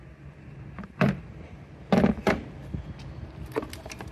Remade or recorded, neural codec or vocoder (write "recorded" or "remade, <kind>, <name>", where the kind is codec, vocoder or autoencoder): recorded